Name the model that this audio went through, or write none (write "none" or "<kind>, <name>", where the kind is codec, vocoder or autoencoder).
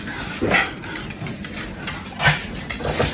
vocoder, BigVGAN v2